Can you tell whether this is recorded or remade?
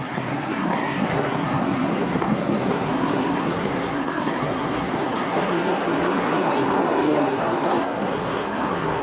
remade